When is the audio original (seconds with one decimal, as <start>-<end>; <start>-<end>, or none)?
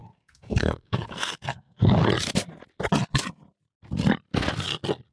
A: 2.0-5.1